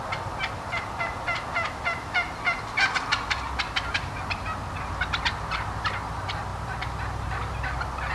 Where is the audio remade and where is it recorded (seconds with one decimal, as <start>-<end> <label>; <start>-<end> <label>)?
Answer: 0.0-8.1 recorded